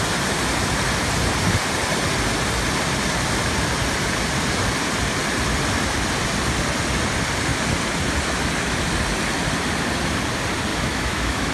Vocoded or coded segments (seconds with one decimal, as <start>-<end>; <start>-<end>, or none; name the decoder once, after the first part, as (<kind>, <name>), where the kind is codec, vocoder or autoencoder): 10.7-11.5 (autoencoder, DAC-VAE)